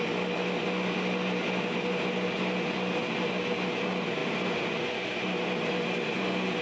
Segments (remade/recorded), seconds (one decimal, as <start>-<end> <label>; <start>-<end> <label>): 0.0-6.6 recorded